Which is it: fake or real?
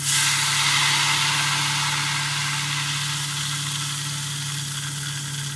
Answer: real